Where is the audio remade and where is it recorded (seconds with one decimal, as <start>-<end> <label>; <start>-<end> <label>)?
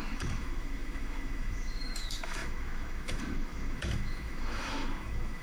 0.0-5.4 remade